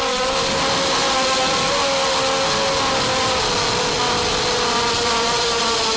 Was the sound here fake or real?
real